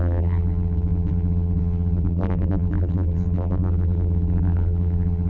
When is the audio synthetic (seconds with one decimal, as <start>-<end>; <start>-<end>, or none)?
0.0-5.3

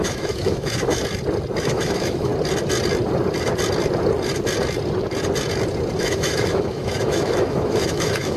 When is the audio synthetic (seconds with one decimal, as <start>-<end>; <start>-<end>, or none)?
0.0-1.0; 1.6-2.3; 6.0-8.4

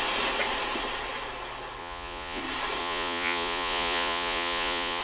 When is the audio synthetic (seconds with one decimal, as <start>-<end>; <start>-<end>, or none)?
1.8-2.4; 2.8-5.0

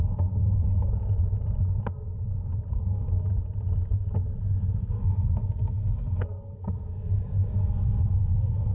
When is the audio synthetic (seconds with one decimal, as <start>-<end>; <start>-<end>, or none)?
0.0-0.9; 2.7-3.3; 4.9-8.7

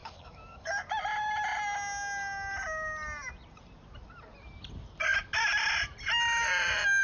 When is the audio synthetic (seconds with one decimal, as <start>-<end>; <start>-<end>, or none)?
0.0-0.7

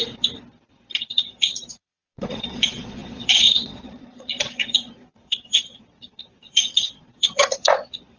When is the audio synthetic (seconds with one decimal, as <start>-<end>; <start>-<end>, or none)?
1.0-8.2

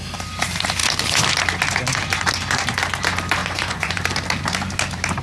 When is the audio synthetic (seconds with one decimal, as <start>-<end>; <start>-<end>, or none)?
3.4-4.0